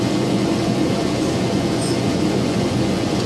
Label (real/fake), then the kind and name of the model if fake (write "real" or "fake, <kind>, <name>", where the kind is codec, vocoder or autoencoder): fake, vocoder, Vocos